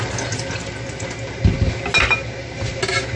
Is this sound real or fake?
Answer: real